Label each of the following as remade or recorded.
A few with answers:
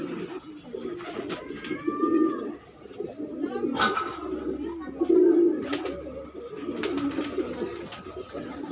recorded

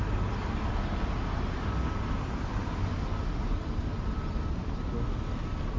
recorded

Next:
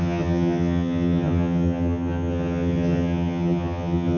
remade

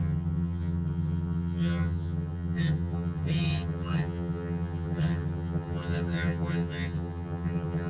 remade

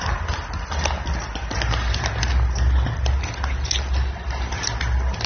recorded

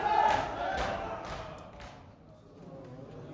recorded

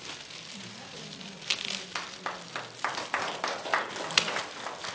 recorded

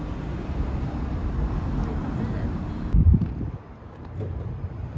recorded